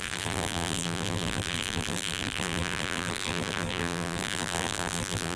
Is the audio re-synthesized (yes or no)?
yes